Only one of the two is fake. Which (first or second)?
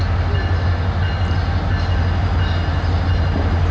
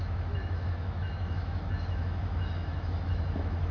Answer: second